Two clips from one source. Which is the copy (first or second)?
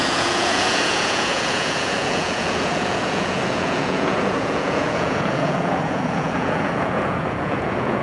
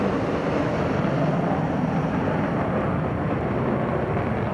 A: first